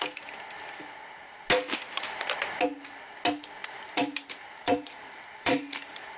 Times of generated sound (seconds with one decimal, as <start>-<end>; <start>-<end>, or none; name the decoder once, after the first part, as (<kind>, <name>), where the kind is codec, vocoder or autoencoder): 3.6-5.6 (vocoder, BigVGAN v2)